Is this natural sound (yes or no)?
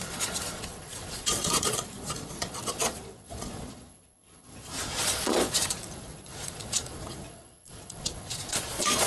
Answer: no